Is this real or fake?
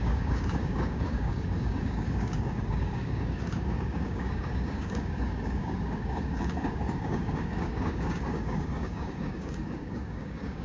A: fake